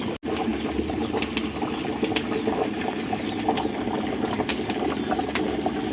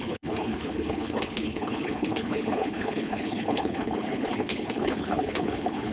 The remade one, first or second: second